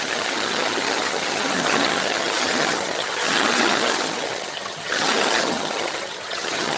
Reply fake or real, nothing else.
fake